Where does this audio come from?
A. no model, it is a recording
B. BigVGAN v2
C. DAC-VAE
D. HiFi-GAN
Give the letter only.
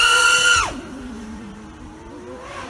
B